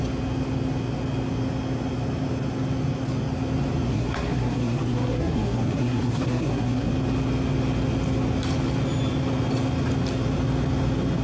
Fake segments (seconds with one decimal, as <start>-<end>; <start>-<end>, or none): 3.9-6.9